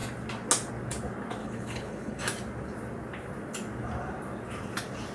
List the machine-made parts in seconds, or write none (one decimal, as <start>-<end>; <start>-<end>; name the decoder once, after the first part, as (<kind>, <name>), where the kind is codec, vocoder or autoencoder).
1.4-2.2 (codec, HILCodec)